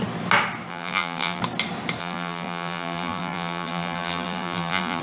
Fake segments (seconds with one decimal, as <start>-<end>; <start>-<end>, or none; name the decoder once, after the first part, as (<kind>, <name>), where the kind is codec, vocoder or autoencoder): 0.7-1.4 (vocoder, BigVGAN v2); 2.0-5.0